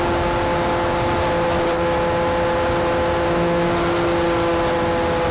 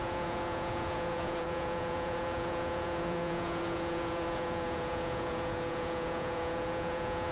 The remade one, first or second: second